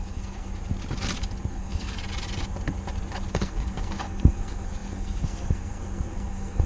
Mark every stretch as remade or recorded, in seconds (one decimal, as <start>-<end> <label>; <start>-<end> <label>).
0.0-0.5 remade; 0.5-1.5 recorded; 1.5-2.0 remade; 2.0-3.3 recorded; 3.3-6.7 remade